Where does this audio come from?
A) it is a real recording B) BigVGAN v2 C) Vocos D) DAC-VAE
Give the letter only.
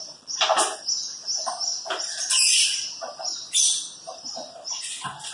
A